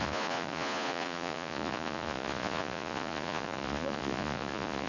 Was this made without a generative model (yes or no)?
no